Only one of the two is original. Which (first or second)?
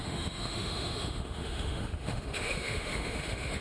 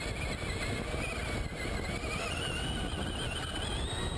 second